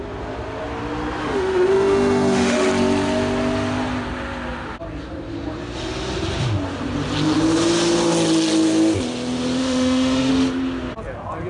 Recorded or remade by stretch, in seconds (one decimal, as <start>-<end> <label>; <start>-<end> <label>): 0.0-1.2 recorded; 1.2-2.7 remade; 2.7-9.6 recorded; 9.6-10.3 remade; 10.3-11.5 recorded